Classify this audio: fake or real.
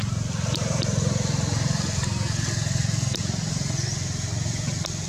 real